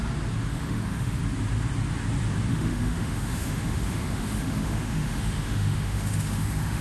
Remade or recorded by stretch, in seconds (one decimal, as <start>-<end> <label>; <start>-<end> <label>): 0.0-0.5 recorded; 0.5-1.2 remade; 1.2-2.5 recorded; 2.5-6.8 remade